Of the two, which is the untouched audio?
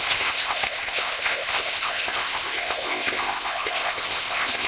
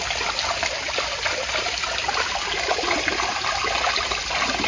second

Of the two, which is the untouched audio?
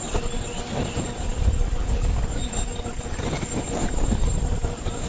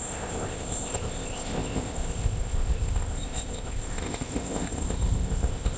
first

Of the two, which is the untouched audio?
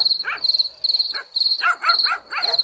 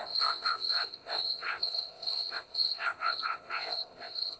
first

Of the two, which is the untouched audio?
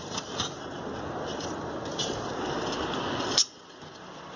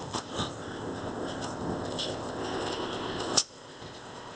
first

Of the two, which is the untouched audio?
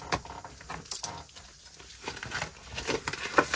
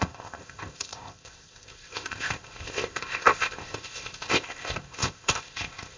first